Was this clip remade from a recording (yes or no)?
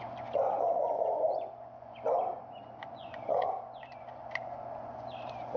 yes